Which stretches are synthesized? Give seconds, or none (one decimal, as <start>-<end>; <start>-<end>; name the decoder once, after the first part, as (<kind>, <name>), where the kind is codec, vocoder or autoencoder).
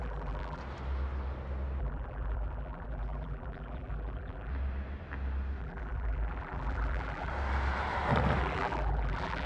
0.0-0.6 (vocoder, BigVGAN v2); 1.8-4.5; 5.6-7.3; 8.4-9.5